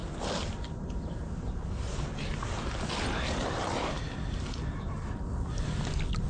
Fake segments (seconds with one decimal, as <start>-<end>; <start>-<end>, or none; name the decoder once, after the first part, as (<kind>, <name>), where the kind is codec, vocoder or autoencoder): none